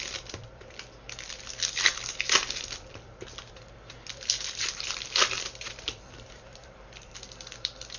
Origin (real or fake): fake